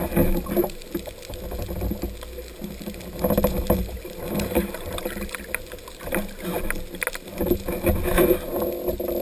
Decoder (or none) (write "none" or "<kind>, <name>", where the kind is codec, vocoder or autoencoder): none